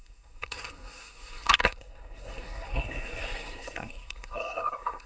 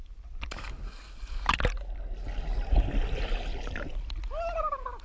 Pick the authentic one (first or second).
second